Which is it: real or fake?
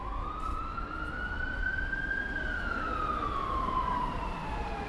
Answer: real